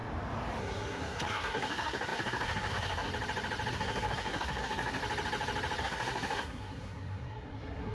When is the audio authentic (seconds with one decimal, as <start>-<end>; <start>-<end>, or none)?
0.0-0.6; 3.1-3.7; 5.0-5.8